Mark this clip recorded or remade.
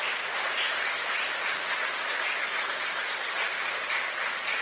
remade